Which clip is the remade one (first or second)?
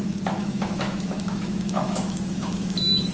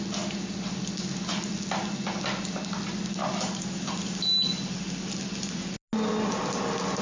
first